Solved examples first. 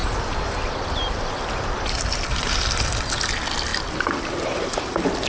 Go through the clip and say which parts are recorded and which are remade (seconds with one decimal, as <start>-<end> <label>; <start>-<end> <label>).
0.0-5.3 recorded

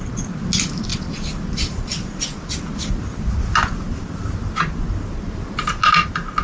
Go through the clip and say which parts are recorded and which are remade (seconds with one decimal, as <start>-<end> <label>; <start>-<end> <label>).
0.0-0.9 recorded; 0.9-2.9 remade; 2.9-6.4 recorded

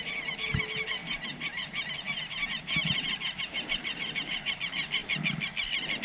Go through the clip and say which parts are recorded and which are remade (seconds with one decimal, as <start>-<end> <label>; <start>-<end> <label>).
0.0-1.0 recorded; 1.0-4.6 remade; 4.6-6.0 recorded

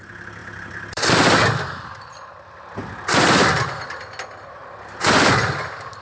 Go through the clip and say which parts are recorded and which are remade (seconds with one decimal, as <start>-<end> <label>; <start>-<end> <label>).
0.0-0.4 recorded; 0.4-3.5 remade; 3.5-4.6 recorded; 4.6-5.3 remade; 5.3-6.0 recorded

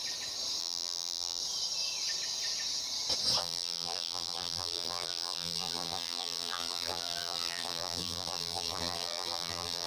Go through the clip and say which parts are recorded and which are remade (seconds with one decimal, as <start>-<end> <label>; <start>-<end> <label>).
0.0-0.6 recorded; 0.6-1.4 remade; 1.4-3.4 recorded; 3.4-9.9 remade

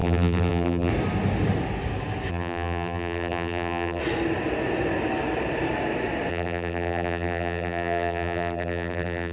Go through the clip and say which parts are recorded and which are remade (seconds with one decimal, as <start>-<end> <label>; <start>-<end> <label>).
0.0-0.9 remade; 0.9-2.3 recorded; 2.3-4.0 remade; 4.0-6.3 recorded; 6.3-9.3 remade